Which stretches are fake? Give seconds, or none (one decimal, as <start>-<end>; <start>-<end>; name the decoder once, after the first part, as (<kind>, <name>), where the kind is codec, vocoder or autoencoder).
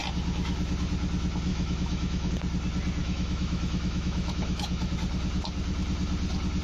1.5-2.3 (autoencoder, DAC-VAE); 3.0-4.9